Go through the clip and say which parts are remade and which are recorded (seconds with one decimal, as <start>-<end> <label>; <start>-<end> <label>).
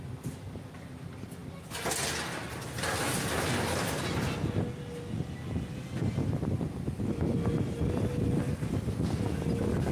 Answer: 0.0-9.9 recorded